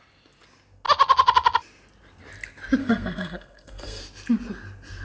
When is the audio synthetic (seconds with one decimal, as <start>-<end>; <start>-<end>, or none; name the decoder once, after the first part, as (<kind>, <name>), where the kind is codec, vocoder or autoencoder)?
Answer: 2.8-4.0 (codec, SNAC)

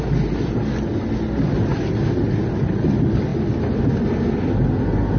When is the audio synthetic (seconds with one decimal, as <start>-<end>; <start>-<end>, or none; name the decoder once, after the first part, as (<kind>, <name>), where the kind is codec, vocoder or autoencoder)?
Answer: none

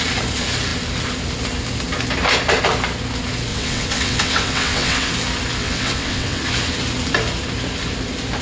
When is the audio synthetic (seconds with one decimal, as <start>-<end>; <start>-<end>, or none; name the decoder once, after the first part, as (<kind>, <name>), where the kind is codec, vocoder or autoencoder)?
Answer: 3.5-5.1 (vocoder, WaveNeXt); 5.6-6.4

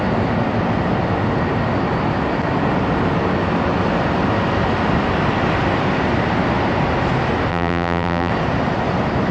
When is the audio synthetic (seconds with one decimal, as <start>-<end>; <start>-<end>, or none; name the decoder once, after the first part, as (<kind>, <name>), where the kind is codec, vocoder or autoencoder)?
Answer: 7.5-8.3 (vocoder, BigVGAN v2)

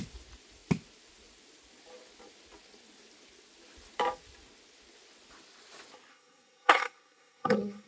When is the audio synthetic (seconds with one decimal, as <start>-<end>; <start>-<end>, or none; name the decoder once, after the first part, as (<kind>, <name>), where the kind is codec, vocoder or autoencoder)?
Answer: 6.1-7.9 (codec, SNAC)

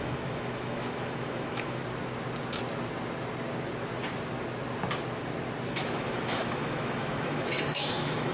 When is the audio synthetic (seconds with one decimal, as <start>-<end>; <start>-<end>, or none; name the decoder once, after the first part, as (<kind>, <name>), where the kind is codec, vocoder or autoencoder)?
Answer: 0.0-1.8 (autoencoder, DAC-VAE); 5.7-8.3